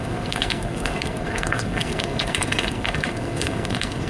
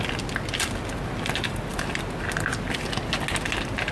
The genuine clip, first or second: second